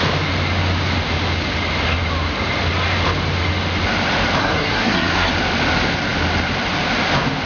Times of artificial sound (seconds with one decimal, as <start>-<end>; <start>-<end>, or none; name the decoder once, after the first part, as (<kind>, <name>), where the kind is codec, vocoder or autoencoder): 4.4-5.3 (codec, SNAC)

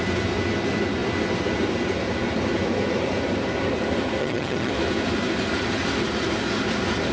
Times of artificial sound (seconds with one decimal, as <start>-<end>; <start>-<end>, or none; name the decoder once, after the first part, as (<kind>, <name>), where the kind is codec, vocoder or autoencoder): 4.2-4.7 (vocoder, HiFi-GAN)

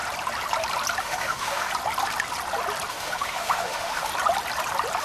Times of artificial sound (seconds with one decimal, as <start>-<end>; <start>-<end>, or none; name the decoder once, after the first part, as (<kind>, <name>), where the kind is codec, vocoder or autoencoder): 1.0-1.7 (autoencoder, DAC-VAE); 2.9-4.1

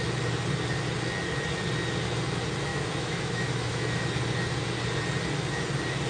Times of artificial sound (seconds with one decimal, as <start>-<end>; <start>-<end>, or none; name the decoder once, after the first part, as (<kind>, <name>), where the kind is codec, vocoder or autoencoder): 2.7-4.0 (autoencoder, DAC-VAE)

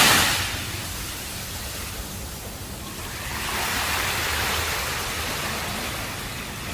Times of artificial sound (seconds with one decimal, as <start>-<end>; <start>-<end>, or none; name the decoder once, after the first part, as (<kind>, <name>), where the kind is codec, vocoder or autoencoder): 2.6-4.0 (vocoder, BigVGAN v2); 4.9-5.6

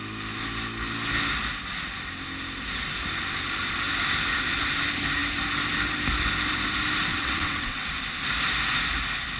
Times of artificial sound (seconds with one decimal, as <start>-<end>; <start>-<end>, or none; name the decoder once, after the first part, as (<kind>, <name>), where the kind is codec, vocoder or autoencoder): 7.1-7.9 (vocoder, WaveNeXt)

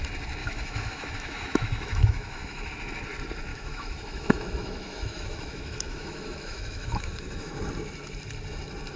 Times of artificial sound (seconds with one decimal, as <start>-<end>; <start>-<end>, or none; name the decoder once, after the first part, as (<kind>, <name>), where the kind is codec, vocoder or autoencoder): 0.4-2.7 (autoencoder, DAC-VAE); 3.5-7.6